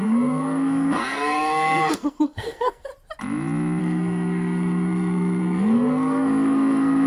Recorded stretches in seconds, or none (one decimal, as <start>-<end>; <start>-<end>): 2.9-3.8